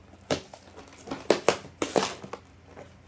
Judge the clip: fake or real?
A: real